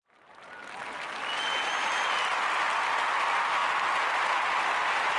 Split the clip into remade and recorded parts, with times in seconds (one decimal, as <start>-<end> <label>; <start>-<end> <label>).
0.0-5.2 recorded